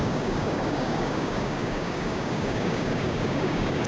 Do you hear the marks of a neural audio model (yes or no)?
yes